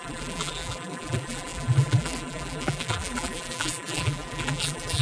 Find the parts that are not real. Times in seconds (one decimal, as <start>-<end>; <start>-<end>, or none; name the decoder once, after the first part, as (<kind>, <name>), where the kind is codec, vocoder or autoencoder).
0.0-5.0 (vocoder, BigVGAN v2)

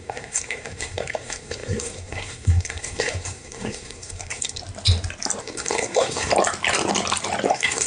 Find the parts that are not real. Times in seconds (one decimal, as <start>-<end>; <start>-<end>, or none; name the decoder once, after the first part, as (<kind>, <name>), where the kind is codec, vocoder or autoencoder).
0.0-4.6 (codec, SNAC); 5.4-6.3; 7.5-7.9

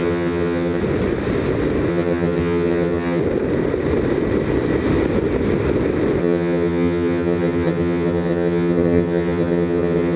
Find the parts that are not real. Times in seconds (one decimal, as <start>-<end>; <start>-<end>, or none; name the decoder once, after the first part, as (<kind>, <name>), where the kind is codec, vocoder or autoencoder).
0.0-0.8 (vocoder, HiFi-GAN); 1.9-3.2; 6.2-10.2

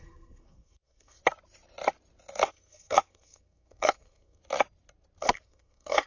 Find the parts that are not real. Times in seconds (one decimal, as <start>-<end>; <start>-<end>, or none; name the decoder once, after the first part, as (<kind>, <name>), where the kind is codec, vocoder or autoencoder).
0.0-1.2 (codec, SNAC); 2.5-4.4; 5.2-6.1

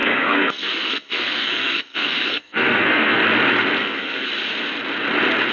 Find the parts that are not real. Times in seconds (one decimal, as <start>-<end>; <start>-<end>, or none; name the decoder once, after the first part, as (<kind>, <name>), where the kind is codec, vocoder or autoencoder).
0.0-3.2 (codec, SNAC); 3.8-4.3